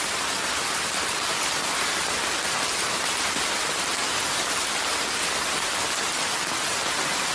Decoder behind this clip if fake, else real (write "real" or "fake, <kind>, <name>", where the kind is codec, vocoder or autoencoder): real